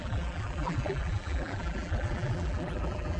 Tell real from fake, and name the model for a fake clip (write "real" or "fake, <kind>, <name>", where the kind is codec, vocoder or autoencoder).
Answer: fake, vocoder, BigVGAN v2